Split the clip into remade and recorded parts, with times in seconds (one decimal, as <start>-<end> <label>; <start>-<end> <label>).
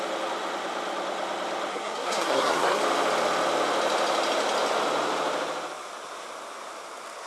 0.0-1.7 recorded; 1.7-2.8 remade; 2.8-7.3 recorded